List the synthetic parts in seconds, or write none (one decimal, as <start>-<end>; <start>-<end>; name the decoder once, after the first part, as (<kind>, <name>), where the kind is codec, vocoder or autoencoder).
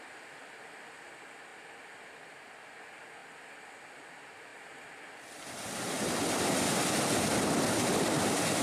none